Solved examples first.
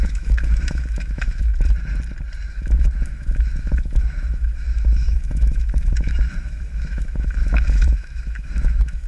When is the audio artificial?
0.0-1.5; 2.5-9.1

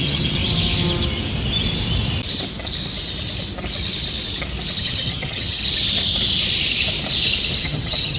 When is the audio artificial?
0.0-0.4; 4.8-5.6; 7.6-8.2

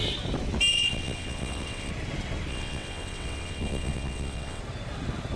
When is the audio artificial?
0.7-1.9; 2.5-4.6

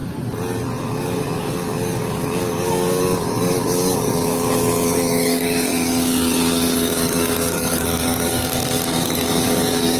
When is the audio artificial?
0.8-10.0

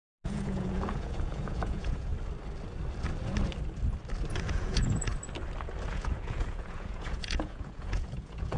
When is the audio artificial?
0.0-2.1; 4.4-5.1; 5.9-8.6